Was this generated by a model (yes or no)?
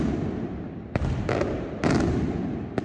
no